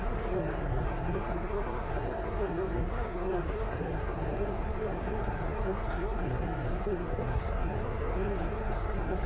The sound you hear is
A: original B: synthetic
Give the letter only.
B